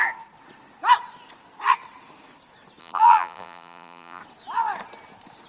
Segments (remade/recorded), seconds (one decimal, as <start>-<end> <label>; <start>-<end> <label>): 0.0-2.8 recorded; 2.8-4.2 remade; 4.2-5.5 recorded